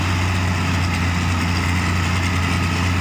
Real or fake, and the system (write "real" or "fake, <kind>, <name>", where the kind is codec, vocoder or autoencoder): real